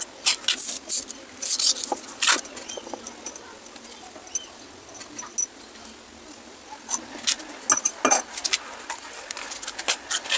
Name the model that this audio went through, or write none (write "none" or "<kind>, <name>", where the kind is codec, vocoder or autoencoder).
none